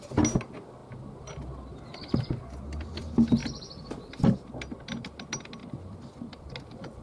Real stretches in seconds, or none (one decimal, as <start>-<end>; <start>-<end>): 0.0-3.4; 4.3-5.6